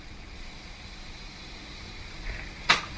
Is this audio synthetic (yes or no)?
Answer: yes